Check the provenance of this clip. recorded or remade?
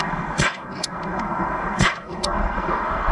remade